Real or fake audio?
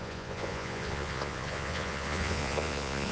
fake